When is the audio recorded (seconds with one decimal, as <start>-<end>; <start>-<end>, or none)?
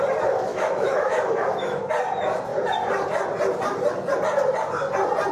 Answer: 0.0-0.5; 1.9-5.3